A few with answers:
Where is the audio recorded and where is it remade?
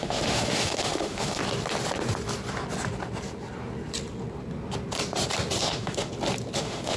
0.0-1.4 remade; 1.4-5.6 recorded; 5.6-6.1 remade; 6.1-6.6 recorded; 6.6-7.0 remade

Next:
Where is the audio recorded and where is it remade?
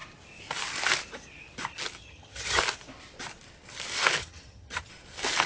0.0-2.0 recorded; 2.0-2.6 remade; 2.6-4.2 recorded; 4.2-4.9 remade; 4.9-5.5 recorded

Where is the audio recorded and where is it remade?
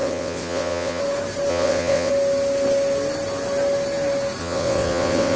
0.0-1.0 remade; 1.0-1.5 recorded; 1.5-2.1 remade; 2.1-4.4 recorded; 4.4-5.4 remade